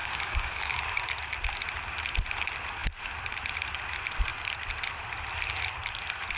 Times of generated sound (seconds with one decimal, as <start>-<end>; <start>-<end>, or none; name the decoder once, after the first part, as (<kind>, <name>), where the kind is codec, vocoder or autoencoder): 0.0-0.8 (codec, DAC)

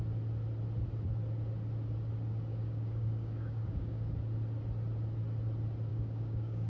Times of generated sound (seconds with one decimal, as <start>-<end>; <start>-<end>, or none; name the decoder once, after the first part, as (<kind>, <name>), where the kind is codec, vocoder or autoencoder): 2.5-4.1 (codec, DAC); 5.9-6.7

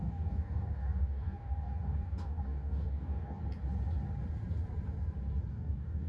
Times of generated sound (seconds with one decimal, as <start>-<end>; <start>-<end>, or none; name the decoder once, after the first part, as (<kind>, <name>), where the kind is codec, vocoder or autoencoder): 0.0-3.4 (codec, DAC); 5.5-6.1

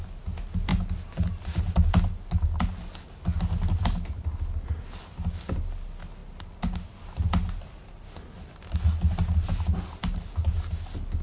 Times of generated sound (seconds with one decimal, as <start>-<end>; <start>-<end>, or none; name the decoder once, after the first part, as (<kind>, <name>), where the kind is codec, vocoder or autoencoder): none

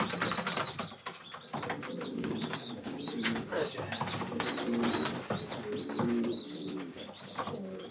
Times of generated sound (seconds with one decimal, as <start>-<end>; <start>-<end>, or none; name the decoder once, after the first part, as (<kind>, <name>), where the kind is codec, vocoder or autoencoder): 2.1-3.7 (codec, DAC); 5.8-7.9